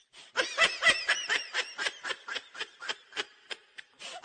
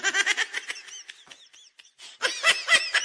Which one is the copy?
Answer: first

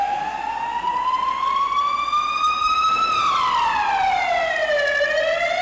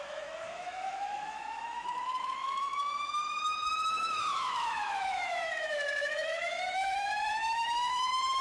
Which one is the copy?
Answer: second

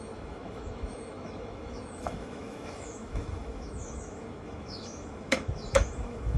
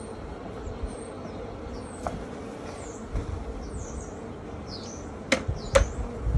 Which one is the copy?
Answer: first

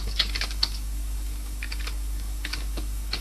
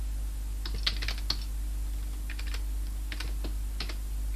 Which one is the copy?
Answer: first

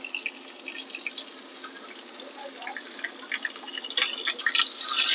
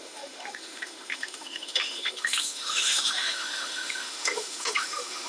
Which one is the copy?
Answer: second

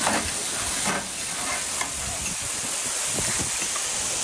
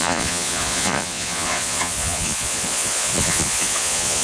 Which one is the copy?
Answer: second